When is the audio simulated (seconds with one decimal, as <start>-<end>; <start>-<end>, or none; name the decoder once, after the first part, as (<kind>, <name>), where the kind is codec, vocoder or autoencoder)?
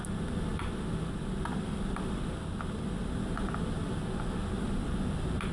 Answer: none